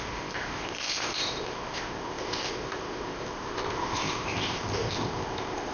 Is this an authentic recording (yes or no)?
no